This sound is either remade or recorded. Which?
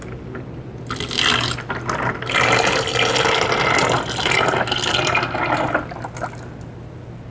recorded